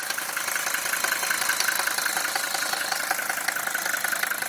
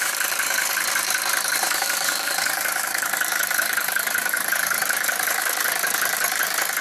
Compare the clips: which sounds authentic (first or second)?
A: first